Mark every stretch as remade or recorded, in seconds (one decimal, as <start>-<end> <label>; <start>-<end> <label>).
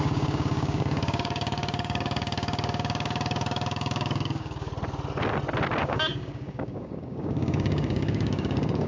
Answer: 0.0-4.7 remade; 4.7-5.8 recorded; 5.8-8.9 remade